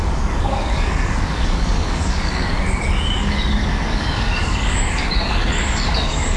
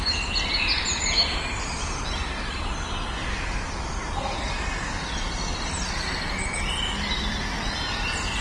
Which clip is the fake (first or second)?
first